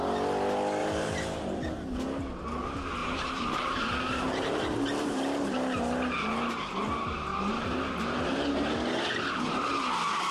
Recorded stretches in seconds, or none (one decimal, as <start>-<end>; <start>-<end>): 0.0-0.8; 1.6-3.0; 4.6-7.3; 7.9-10.3